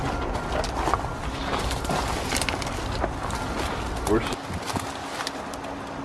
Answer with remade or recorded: recorded